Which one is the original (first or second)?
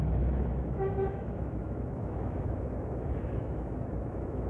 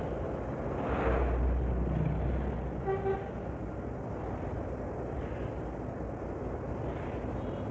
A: second